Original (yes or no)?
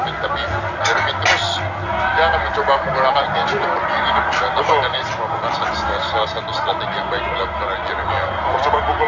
yes